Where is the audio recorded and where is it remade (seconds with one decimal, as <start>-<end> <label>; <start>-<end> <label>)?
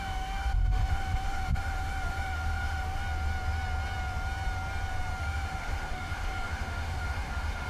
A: 0.0-3.0 remade; 3.0-5.2 recorded; 5.2-7.7 remade